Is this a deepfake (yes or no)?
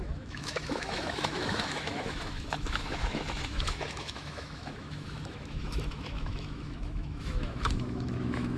yes